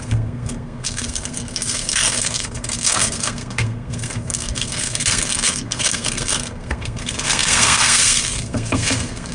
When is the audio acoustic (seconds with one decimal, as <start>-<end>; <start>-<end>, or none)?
none